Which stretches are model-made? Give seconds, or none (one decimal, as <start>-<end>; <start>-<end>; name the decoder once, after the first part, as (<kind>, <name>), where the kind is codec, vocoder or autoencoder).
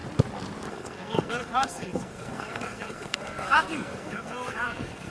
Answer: 0.7-5.1 (codec, SNAC)